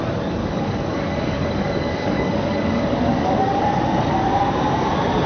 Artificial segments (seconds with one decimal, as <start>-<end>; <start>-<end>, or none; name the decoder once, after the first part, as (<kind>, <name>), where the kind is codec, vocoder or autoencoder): 0.4-3.6 (codec, DAC)

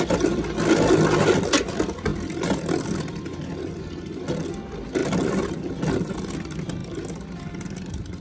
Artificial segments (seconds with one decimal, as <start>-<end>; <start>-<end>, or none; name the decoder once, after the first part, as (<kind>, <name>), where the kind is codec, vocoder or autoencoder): none